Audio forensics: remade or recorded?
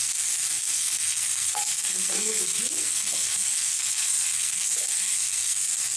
remade